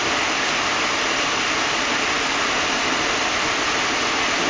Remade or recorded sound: recorded